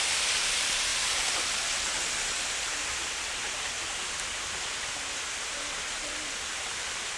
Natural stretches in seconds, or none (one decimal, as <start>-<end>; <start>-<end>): 0.0-7.2